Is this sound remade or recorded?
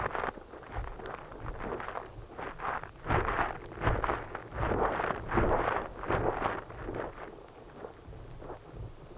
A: recorded